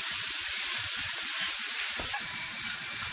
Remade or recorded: remade